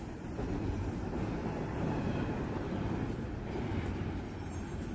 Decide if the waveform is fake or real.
real